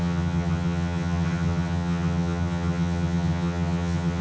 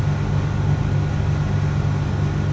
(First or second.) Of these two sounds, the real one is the second